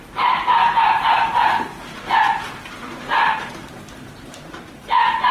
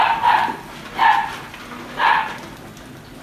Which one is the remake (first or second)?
first